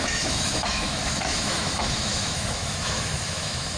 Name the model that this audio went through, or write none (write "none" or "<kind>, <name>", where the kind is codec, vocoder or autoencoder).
autoencoder, DAC-VAE